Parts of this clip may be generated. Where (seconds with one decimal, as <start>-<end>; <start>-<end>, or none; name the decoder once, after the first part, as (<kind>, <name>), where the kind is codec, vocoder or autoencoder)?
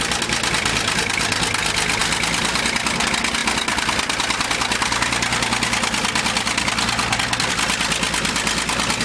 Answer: none